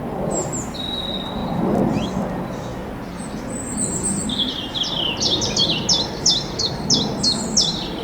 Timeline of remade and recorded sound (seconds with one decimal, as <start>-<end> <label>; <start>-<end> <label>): 0.0-8.0 recorded